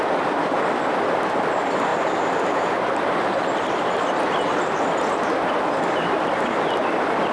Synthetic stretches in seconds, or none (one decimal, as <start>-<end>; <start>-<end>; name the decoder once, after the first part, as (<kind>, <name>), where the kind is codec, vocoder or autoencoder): none